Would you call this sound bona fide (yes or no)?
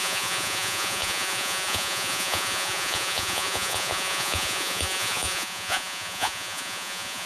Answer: no